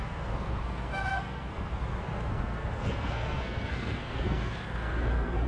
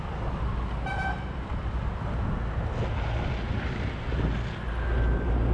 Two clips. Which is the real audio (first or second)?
second